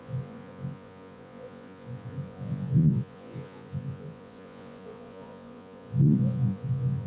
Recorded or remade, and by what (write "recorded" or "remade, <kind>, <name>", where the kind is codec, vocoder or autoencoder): remade, vocoder, Vocos